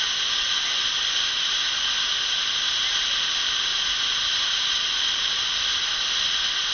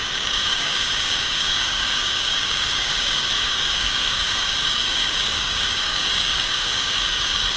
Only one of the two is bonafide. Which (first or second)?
first